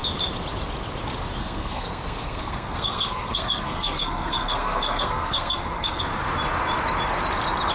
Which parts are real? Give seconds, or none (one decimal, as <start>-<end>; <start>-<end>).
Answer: 0.0-1.4; 6.0-7.7